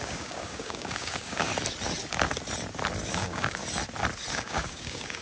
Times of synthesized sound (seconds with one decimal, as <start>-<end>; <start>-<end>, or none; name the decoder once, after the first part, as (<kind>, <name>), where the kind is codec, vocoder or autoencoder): 0.0-1.5 (codec, DAC); 3.1-3.6; 4.3-5.2

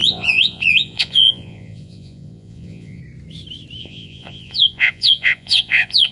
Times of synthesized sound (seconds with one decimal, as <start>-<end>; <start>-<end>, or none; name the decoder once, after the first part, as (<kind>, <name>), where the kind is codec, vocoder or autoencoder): 0.0-3.0 (vocoder, Vocos); 3.8-6.1

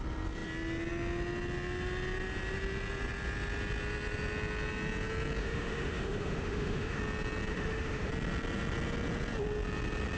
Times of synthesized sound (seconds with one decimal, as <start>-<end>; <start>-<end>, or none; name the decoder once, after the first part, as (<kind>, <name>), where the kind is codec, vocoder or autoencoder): 5.4-7.0 (autoencoder, DAC-VAE); 7.5-8.1

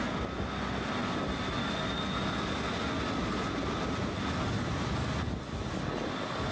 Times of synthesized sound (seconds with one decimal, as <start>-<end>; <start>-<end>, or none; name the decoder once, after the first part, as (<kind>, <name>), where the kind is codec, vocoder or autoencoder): none

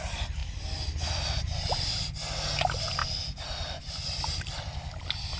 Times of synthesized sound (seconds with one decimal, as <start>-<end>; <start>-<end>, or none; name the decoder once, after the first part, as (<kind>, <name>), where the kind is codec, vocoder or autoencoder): none

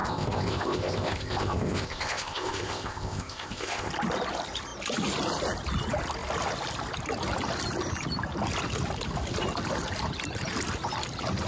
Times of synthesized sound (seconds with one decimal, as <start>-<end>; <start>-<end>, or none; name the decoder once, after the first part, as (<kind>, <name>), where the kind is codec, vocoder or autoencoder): 0.0-3.9 (codec, ZipCodec)

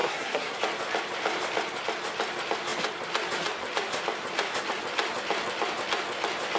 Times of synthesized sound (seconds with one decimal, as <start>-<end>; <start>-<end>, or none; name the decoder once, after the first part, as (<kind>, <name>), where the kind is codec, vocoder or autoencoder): 0.0-0.6 (codec, SNAC)

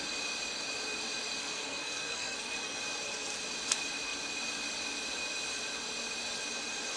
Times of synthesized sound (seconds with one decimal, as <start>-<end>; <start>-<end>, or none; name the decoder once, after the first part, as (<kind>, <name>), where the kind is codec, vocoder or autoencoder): 1.4-2.8 (codec, SNAC)